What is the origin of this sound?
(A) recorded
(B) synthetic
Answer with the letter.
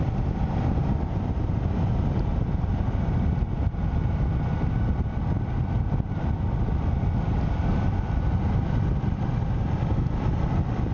A